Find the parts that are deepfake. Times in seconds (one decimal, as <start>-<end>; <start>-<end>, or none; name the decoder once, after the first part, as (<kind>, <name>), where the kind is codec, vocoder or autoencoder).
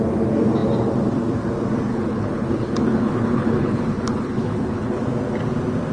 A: 1.9-5.0 (codec, HILCodec)